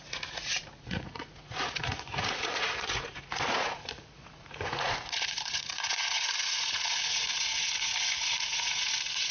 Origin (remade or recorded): remade